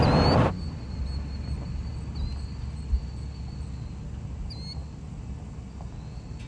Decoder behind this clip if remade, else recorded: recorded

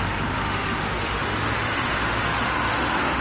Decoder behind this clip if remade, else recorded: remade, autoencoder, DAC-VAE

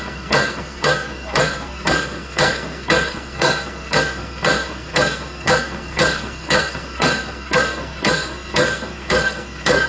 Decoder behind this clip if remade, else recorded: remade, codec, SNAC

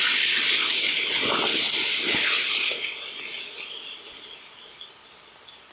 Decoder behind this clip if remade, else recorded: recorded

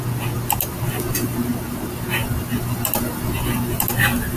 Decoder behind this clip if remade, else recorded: recorded